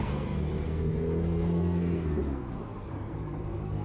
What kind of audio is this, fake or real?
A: fake